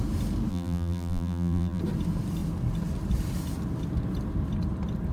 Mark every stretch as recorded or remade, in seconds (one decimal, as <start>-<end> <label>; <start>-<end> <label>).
0.0-0.5 recorded; 0.5-1.8 remade; 1.8-5.1 recorded

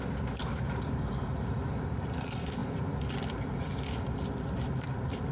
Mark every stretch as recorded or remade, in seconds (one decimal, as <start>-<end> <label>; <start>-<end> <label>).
0.0-3.7 remade; 3.7-4.6 recorded; 4.6-5.3 remade

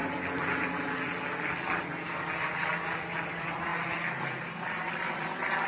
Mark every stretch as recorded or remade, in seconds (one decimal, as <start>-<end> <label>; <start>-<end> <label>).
0.0-3.3 recorded; 3.3-3.7 remade; 3.7-4.2 recorded; 4.2-5.7 remade

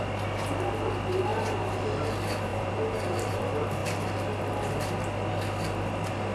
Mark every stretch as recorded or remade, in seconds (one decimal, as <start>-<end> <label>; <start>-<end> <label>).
0.0-2.5 recorded; 2.5-3.4 remade; 3.4-6.3 recorded